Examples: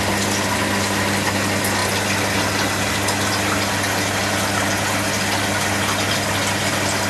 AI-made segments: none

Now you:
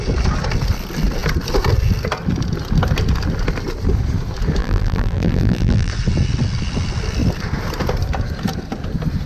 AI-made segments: 4.6-5.9 (vocoder, BigVGAN v2)

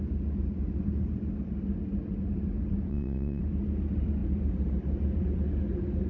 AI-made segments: 2.9-3.4 (vocoder, WaveNeXt)

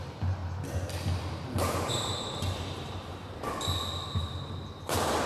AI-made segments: 0.0-0.4 (vocoder, BigVGAN v2); 1.3-5.3